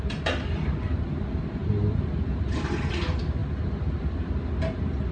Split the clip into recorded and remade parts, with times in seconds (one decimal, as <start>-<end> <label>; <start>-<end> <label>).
0.0-5.1 recorded